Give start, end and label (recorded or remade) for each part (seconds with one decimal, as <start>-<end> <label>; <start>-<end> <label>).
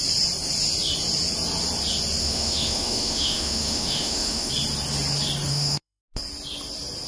0.0-2.2 recorded; 2.2-4.5 remade; 4.5-5.5 recorded; 5.5-6.0 remade; 6.0-7.1 recorded